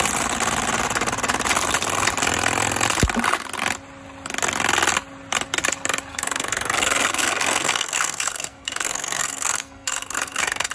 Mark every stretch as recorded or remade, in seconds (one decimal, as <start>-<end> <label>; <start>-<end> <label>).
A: 0.0-6.1 recorded; 6.1-10.7 remade